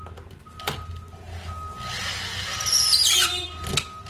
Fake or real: real